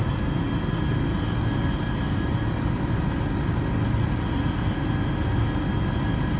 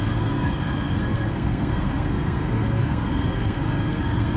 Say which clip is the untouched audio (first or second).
first